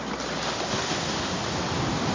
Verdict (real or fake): real